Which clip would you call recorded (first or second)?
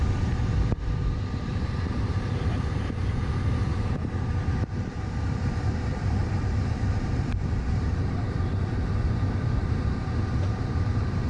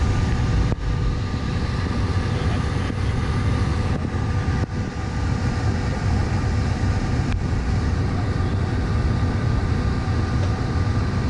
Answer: second